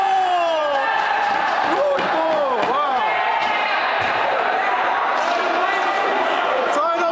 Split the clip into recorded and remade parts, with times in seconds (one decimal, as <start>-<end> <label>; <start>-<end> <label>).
0.0-7.1 remade